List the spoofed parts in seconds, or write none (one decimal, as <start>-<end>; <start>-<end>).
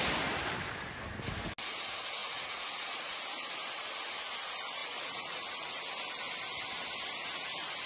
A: 2.2-3.2; 4.8-5.9